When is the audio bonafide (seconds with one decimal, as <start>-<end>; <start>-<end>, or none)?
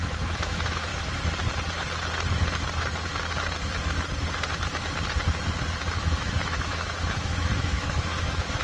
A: 0.9-6.0